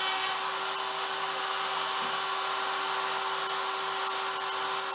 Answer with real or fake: real